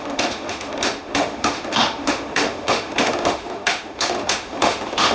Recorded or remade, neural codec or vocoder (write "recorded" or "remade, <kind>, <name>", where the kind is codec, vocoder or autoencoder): remade, autoencoder, DAC-VAE